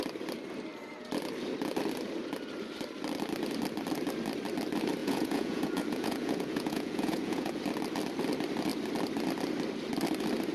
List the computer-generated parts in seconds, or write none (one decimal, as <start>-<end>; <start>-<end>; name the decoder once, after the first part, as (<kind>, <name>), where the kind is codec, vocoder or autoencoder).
5.0-7.6 (vocoder, Vocos)